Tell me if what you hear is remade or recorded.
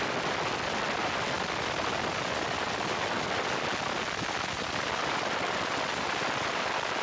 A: recorded